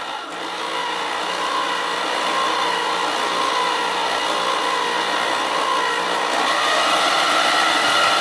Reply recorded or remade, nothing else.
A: recorded